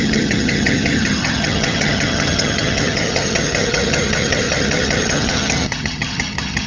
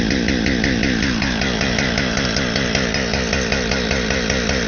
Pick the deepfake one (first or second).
first